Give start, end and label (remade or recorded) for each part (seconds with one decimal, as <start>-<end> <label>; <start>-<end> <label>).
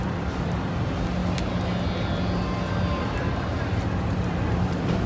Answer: 0.0-1.2 remade; 1.2-3.0 recorded; 3.0-3.5 remade; 3.5-4.0 recorded; 4.0-5.1 remade